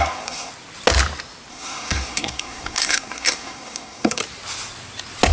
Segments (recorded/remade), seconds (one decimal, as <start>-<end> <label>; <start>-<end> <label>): 0.0-0.5 remade; 0.5-1.5 recorded; 1.5-4.2 remade; 4.2-5.3 recorded